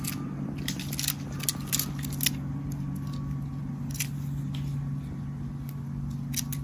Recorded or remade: recorded